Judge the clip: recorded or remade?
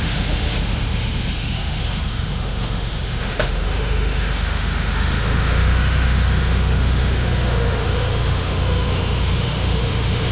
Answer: remade